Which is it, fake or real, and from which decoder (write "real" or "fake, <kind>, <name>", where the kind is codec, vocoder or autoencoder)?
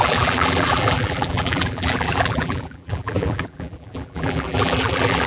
fake, vocoder, BigVGAN v2